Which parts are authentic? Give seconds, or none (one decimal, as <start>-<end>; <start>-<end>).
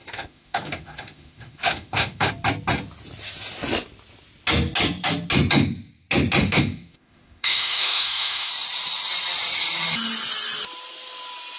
2.3-6.4; 8.5-11.6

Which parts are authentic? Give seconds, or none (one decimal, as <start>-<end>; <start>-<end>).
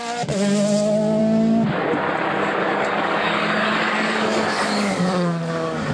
0.0-2.6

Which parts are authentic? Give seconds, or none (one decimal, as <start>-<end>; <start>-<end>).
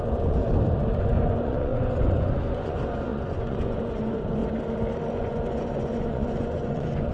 0.4-1.0; 4.4-5.1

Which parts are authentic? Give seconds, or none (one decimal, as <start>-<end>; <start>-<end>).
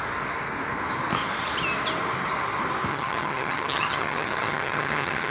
0.0-2.9